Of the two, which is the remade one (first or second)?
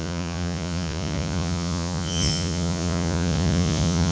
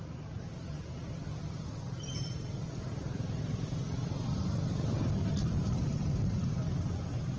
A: first